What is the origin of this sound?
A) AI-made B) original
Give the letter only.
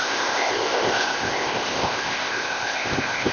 A